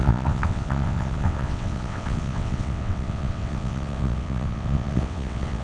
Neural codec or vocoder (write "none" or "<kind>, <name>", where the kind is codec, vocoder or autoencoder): vocoder, WaveNeXt